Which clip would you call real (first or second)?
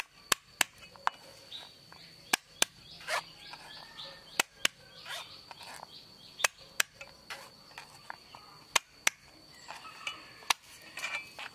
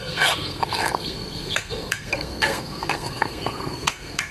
first